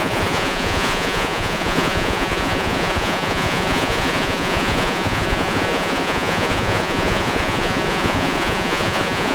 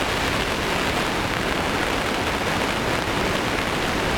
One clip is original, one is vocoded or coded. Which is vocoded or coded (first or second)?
first